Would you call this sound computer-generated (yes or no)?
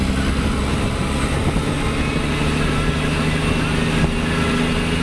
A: no